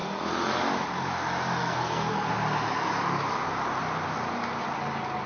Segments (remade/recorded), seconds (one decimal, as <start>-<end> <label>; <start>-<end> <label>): 0.0-1.6 recorded; 1.6-2.3 remade; 2.3-5.3 recorded

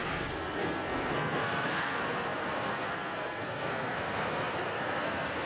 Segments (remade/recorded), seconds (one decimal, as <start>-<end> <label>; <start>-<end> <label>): 0.0-5.5 remade

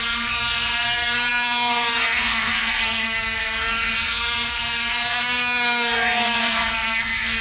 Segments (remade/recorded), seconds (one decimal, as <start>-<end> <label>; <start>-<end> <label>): 0.0-7.4 remade

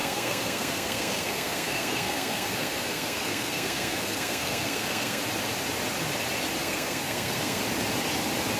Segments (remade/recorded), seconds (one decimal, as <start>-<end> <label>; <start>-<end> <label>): 0.0-5.2 remade; 5.2-6.6 recorded; 6.6-7.6 remade; 7.6-8.6 recorded

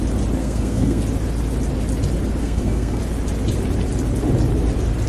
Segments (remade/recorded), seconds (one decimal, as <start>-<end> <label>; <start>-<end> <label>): 0.0-0.4 recorded; 0.4-1.0 remade; 1.0-2.4 recorded; 2.4-3.0 remade; 3.0-5.1 recorded

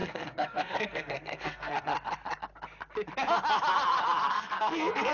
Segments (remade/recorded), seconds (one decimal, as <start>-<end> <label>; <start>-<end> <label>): 0.0-1.9 remade; 1.9-4.3 recorded; 4.3-5.1 remade

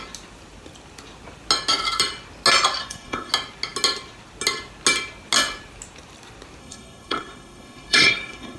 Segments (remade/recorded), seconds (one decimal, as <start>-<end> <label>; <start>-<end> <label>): 0.0-2.8 recorded; 2.8-3.3 remade; 3.3-6.6 recorded; 6.6-8.6 remade

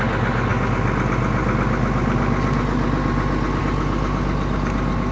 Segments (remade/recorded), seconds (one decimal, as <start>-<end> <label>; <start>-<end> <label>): 0.0-5.1 recorded